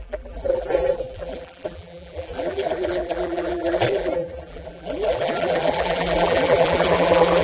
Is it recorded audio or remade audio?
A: remade